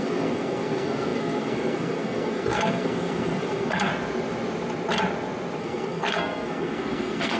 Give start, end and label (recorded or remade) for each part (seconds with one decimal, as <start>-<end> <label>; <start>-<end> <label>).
0.0-3.9 remade; 3.9-5.6 recorded; 5.6-7.4 remade